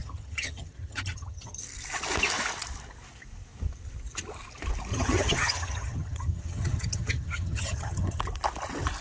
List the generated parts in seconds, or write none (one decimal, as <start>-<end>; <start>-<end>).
0.0-1.6; 4.9-8.2